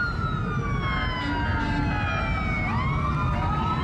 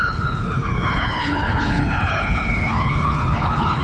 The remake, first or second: second